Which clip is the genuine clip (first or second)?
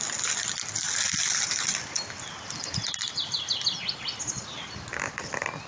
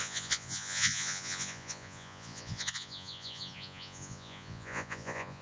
first